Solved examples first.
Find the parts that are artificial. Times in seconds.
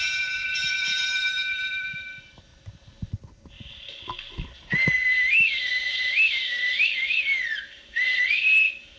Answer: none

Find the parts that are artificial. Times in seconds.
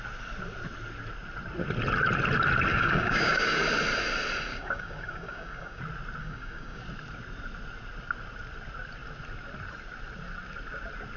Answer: 2.7-3.6; 4.5-5.8; 6.2-6.8